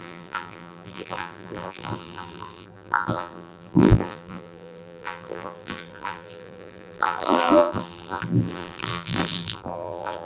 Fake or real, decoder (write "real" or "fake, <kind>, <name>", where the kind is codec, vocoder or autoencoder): fake, vocoder, BigVGAN v2